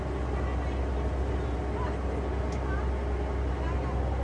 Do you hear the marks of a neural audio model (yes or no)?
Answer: no